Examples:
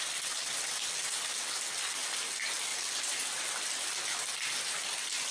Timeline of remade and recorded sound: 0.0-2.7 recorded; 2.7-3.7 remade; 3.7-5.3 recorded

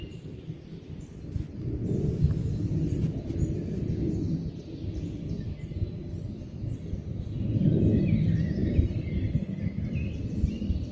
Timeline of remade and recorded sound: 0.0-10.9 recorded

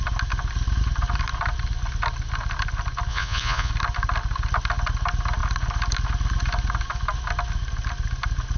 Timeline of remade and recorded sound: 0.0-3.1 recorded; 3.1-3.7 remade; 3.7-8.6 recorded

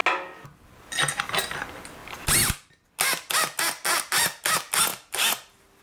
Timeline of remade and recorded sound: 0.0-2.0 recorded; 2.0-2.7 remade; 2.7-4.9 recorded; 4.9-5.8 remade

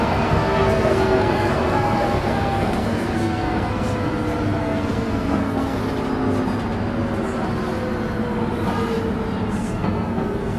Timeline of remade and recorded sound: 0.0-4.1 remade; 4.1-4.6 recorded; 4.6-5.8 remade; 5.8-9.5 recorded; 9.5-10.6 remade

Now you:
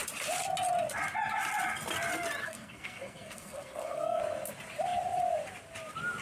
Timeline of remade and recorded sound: 0.0-2.4 recorded; 2.4-4.2 remade; 4.2-6.2 recorded

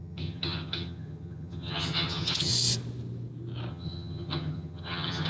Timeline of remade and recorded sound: 0.0-2.5 remade; 2.5-3.7 recorded; 3.7-5.3 remade